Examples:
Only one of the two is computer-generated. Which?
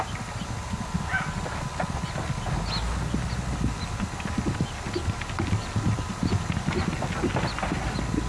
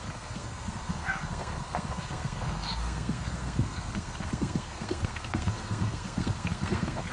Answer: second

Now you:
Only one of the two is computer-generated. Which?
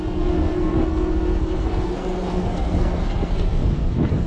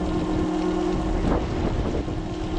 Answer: first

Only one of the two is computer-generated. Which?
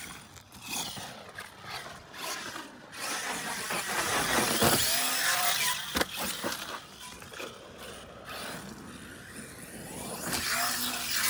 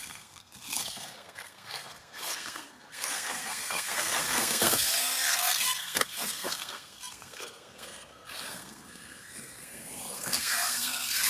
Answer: second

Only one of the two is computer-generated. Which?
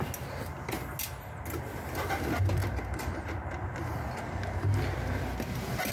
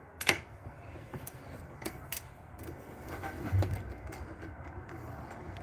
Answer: second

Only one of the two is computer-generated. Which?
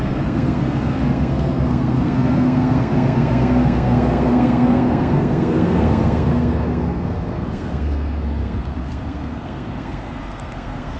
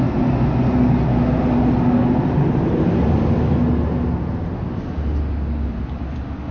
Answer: first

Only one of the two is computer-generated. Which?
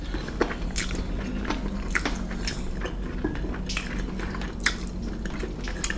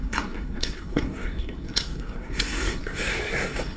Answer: second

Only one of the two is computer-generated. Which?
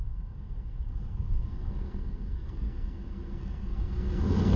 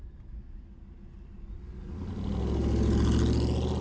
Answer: first